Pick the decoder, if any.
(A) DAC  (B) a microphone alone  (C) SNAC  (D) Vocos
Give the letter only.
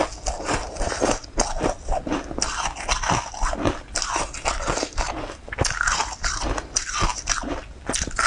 B